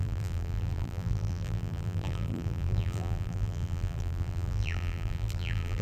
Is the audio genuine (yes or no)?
no